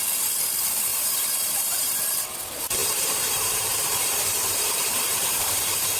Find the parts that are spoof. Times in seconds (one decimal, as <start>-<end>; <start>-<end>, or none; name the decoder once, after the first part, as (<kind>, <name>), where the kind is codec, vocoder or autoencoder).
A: 0.9-2.0 (vocoder, BigVGAN v2); 2.8-6.0